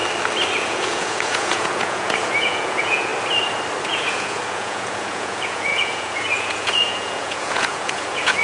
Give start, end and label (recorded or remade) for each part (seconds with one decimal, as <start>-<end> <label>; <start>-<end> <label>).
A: 0.0-0.6 recorded; 0.6-3.1 remade; 3.1-3.8 recorded; 3.8-8.4 remade